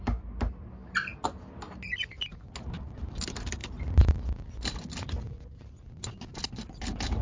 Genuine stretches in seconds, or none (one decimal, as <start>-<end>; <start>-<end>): 0.0-7.2